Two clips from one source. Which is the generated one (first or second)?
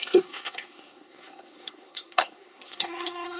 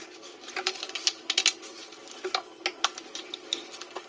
first